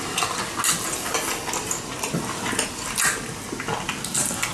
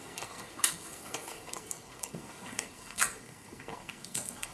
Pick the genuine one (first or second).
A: first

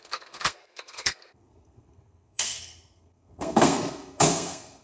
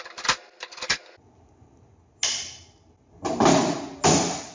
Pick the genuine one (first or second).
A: second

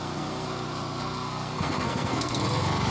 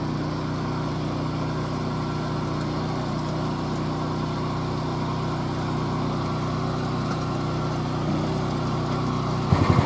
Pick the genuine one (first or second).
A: second